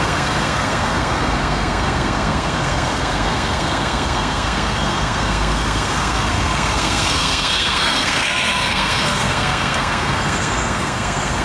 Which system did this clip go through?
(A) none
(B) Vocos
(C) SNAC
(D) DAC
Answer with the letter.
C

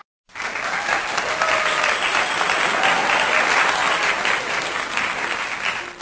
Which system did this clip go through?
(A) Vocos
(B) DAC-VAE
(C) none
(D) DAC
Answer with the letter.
C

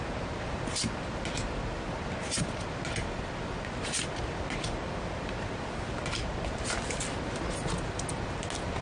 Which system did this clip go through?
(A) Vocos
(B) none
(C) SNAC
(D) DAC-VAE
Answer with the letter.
B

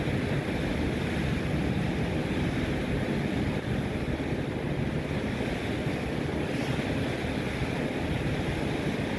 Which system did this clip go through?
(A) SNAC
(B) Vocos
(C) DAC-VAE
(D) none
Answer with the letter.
D